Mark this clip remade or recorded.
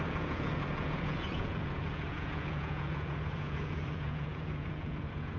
remade